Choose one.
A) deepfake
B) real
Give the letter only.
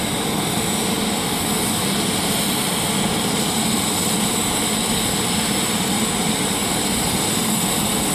B